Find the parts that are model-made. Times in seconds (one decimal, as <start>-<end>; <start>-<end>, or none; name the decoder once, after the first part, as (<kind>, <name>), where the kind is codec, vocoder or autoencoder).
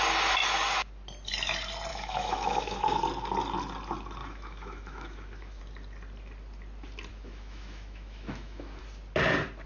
1.9-3.0 (autoencoder, DAC-VAE); 4.2-5.6; 7.1-8.8